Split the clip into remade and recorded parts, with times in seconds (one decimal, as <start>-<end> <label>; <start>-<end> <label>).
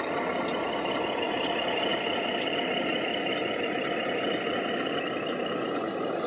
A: 0.0-6.3 recorded